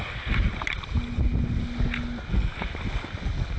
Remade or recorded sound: recorded